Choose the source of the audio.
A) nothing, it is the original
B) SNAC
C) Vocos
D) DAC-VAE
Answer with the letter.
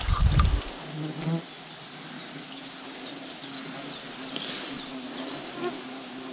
A